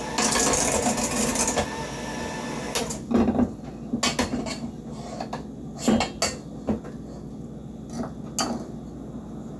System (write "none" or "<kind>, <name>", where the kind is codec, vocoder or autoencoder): none